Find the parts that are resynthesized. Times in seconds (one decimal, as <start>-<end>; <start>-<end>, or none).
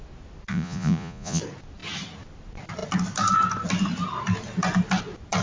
0.5-1.4